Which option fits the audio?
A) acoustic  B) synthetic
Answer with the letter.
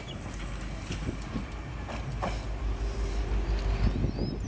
A